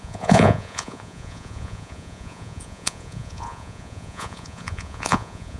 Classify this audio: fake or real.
fake